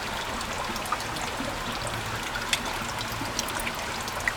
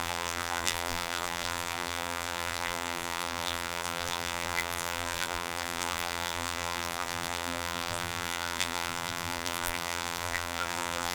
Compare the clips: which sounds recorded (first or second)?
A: first